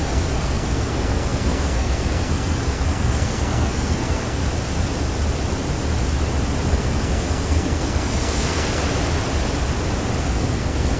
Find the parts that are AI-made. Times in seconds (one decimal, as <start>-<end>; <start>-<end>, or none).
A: 0.0-4.4; 6.7-8.8; 10.2-11.0